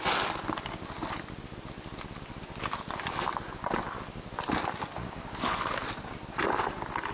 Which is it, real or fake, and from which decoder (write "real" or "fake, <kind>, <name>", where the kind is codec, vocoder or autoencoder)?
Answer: real